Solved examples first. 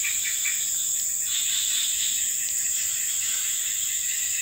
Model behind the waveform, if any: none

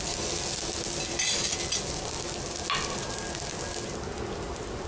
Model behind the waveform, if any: none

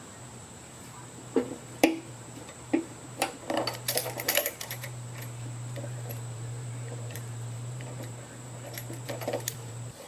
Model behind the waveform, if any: vocoder, BigVGAN v2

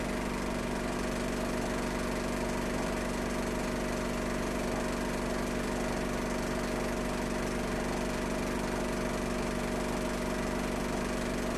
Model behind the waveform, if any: none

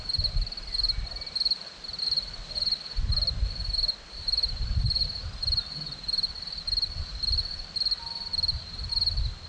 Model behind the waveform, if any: none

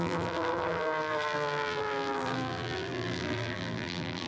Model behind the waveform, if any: vocoder, BigVGAN v2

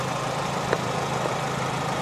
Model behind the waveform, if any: vocoder, BigVGAN v2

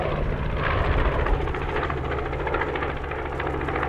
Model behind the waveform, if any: none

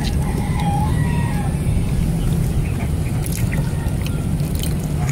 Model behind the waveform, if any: none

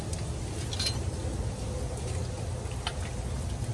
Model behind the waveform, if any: none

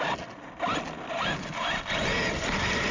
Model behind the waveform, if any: none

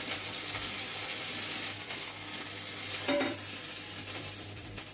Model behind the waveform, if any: vocoder, BigVGAN v2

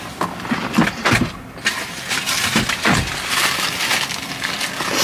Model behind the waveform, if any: none